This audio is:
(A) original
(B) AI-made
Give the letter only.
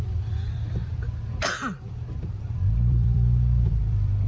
B